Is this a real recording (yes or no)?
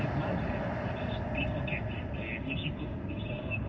yes